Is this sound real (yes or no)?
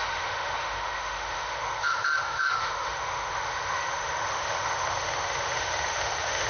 no